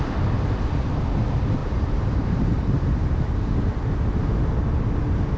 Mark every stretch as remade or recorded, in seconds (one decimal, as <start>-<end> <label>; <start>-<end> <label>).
0.0-1.6 recorded; 1.6-3.2 remade; 3.2-5.4 recorded